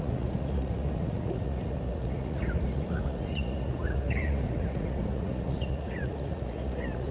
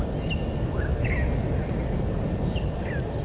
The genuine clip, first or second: second